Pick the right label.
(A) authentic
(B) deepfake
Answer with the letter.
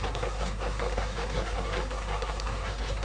B